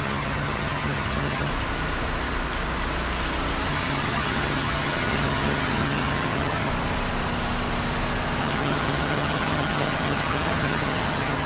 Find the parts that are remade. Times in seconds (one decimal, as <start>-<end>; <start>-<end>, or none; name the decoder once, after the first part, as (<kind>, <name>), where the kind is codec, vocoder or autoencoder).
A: 0.0-1.5 (vocoder, HiFi-GAN); 3.7-6.7; 8.4-11.5